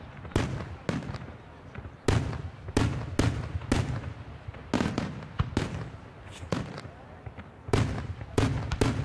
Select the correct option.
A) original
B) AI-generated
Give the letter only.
A